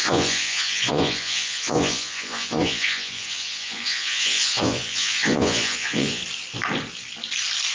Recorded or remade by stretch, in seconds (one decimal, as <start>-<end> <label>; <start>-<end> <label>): 0.0-6.2 remade; 6.2-7.7 recorded